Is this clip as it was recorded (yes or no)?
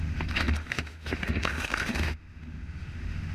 no